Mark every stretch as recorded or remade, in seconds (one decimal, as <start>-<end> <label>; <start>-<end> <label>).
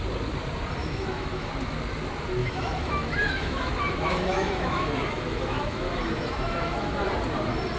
0.0-0.8 recorded; 0.8-1.5 remade; 1.5-2.4 recorded; 2.4-7.1 remade; 7.1-7.8 recorded